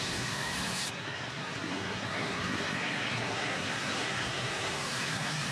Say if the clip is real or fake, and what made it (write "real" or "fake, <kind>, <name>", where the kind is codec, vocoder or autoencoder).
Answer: fake, codec, SNAC